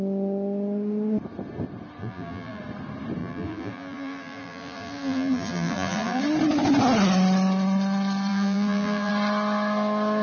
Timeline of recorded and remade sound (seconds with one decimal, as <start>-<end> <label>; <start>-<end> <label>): 0.0-2.0 recorded; 2.0-2.6 remade; 2.6-3.2 recorded; 3.2-6.2 remade; 6.2-8.3 recorded; 8.3-9.1 remade; 9.1-10.2 recorded